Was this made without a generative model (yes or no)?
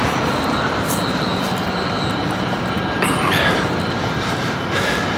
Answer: yes